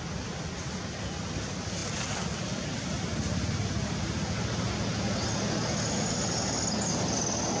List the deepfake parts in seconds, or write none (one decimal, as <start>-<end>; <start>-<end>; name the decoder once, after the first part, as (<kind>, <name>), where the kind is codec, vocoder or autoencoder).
none